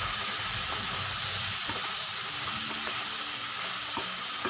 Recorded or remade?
recorded